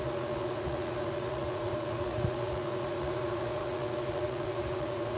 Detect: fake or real fake